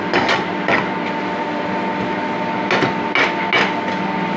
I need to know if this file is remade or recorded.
recorded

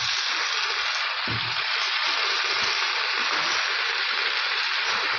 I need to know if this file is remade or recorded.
recorded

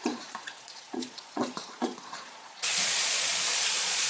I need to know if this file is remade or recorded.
remade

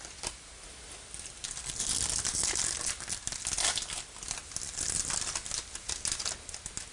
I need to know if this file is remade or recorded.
recorded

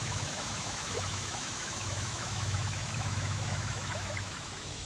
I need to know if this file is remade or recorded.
remade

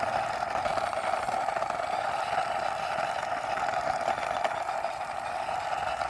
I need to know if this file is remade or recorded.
recorded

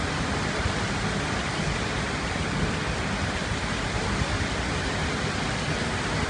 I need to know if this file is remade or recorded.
recorded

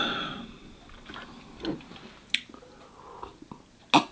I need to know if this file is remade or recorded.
recorded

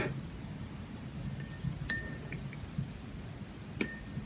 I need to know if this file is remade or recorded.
recorded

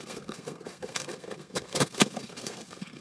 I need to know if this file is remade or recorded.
remade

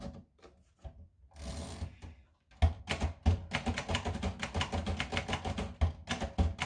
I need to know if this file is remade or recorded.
recorded